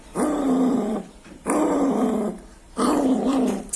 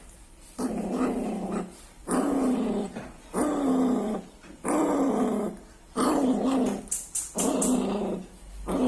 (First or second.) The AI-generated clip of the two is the first